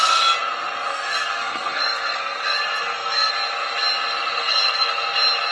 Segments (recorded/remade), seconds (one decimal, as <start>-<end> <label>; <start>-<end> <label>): 0.0-0.9 recorded; 0.9-3.3 remade; 3.3-4.4 recorded; 4.4-4.9 remade; 4.9-5.5 recorded